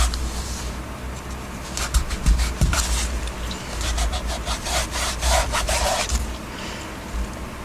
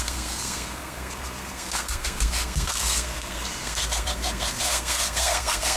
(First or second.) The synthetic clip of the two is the second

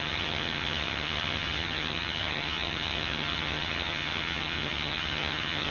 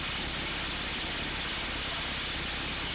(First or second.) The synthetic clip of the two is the first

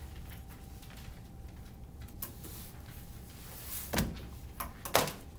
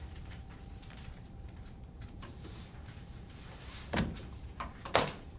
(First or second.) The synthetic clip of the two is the second